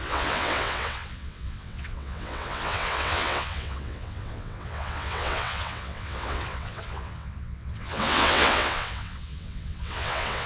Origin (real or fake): fake